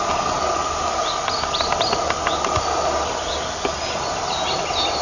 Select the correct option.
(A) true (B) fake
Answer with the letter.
A